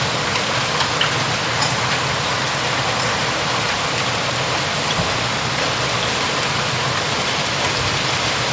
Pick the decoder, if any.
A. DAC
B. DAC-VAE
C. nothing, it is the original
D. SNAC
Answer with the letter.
C